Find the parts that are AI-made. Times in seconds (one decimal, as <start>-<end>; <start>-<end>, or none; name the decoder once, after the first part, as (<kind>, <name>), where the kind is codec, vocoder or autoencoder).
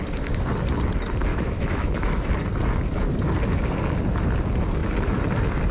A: 1.3-2.3 (autoencoder, DAC-VAE)